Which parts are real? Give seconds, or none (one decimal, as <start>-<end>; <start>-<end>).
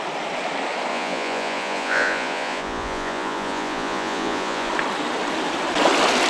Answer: 0.0-0.9; 4.7-6.3